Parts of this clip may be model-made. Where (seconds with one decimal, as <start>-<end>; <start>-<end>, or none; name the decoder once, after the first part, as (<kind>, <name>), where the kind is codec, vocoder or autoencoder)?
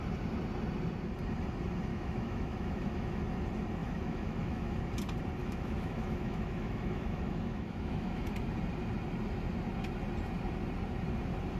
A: 1.9-3.2 (autoencoder, DAC-VAE); 3.8-4.9; 5.4-8.2